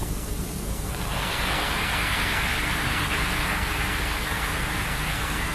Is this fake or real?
fake